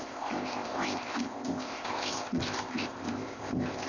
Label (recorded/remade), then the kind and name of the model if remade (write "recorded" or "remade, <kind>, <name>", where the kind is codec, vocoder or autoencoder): remade, codec, ZipCodec